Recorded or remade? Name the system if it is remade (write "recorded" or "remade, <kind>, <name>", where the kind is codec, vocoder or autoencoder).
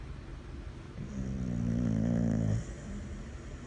recorded